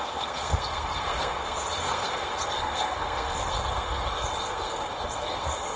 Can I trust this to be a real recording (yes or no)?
no